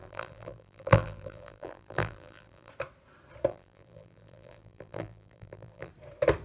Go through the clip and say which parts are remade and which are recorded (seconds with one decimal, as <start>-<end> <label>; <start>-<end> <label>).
0.0-2.7 remade; 2.7-3.5 recorded; 3.5-5.9 remade; 5.9-6.4 recorded